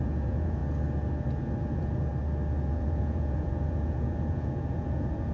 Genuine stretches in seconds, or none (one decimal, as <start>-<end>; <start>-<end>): 0.6-1.6; 2.1-2.7